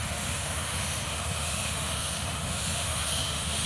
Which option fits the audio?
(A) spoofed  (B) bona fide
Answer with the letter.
A